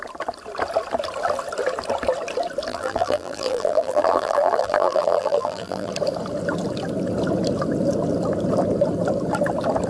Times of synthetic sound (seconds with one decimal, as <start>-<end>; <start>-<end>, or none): 2.7-5.9

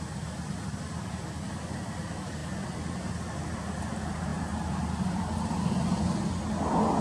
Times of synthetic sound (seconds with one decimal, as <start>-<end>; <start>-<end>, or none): 4.3-5.1

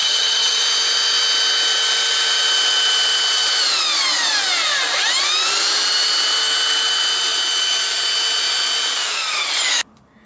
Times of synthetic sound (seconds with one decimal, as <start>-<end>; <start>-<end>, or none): 0.0-0.6

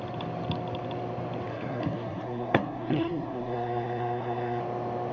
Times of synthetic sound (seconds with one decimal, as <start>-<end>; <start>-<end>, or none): 1.5-4.6

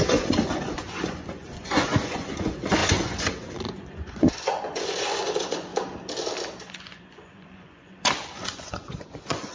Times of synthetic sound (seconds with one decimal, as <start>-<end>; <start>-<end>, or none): 0.0-5.7; 6.6-9.5

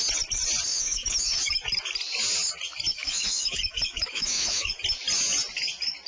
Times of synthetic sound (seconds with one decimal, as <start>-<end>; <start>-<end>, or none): 0.7-1.4; 2.9-4.7